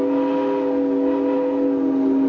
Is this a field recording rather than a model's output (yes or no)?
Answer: yes